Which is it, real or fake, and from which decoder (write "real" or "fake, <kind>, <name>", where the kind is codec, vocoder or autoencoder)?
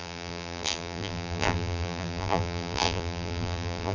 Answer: fake, vocoder, BigVGAN v2